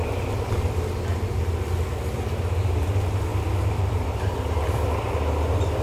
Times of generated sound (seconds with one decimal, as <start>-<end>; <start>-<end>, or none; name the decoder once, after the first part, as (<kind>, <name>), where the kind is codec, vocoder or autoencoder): 0.0-0.8 (vocoder, BigVGAN v2); 3.3-5.1